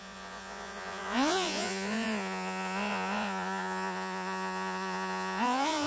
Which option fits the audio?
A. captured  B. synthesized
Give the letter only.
B